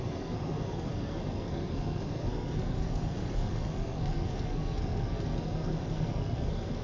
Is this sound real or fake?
fake